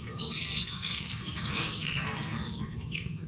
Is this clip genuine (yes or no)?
no